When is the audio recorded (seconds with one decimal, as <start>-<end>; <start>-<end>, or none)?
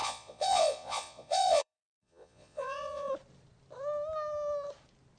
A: 3.1-5.2